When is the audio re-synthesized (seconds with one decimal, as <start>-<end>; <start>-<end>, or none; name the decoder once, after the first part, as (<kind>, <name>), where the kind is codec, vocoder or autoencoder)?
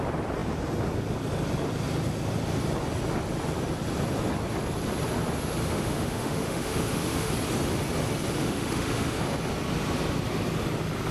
5.6-7.3 (autoencoder, DAC-VAE); 8.4-9.2